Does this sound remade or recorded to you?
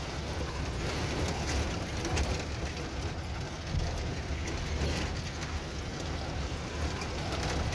recorded